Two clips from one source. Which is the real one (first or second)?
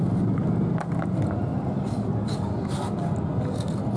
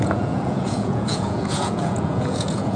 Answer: first